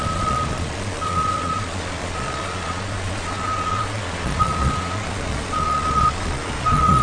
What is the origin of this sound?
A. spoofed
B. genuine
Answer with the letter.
A